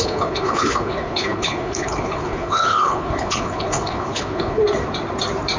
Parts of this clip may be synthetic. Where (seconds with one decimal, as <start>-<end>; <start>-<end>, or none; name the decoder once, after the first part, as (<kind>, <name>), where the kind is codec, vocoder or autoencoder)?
0.0-4.6 (codec, HILCodec)